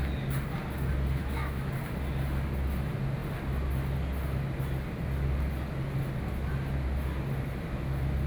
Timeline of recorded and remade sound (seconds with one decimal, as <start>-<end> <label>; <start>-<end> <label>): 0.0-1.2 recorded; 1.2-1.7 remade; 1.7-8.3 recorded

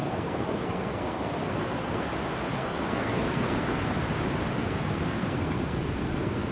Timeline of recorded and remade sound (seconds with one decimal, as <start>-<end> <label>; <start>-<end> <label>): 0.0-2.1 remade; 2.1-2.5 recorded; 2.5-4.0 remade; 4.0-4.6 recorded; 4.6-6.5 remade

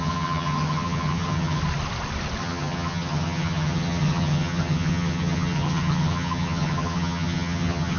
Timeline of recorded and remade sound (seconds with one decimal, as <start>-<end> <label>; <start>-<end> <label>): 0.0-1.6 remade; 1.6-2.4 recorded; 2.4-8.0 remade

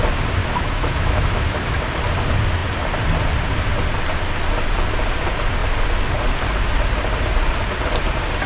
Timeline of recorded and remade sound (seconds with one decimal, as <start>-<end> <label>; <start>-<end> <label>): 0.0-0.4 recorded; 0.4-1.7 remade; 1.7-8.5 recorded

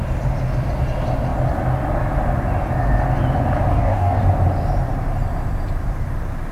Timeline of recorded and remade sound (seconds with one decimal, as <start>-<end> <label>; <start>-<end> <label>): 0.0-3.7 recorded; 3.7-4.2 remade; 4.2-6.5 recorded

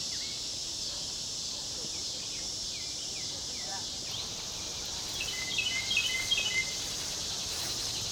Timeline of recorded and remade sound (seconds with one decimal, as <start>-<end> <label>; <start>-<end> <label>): 0.0-0.6 recorded; 0.6-5.5 remade; 5.5-7.2 recorded; 7.2-8.1 remade